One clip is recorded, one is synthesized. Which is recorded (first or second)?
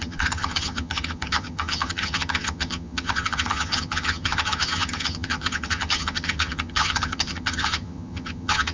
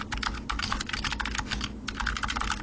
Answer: second